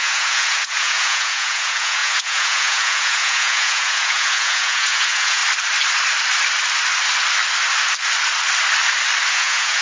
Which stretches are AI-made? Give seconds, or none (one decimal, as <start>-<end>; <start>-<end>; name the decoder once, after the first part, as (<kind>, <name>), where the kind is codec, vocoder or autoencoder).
0.0-5.4 (vocoder, Vocos); 9.3-9.8